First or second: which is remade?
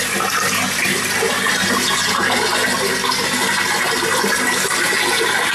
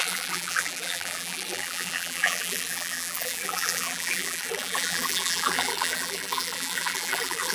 second